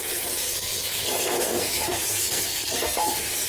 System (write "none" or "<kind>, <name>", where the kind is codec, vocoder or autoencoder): codec, SNAC